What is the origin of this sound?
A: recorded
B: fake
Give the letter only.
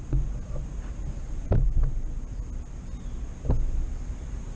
A